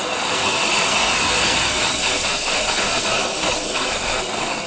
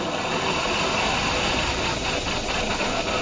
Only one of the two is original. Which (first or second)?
second